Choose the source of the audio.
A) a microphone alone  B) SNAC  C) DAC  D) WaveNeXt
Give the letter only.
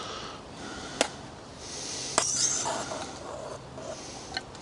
A